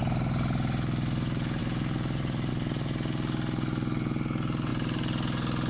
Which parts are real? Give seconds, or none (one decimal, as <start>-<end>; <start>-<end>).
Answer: 0.0-1.6; 2.5-5.7